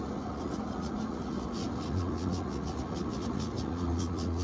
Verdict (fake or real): fake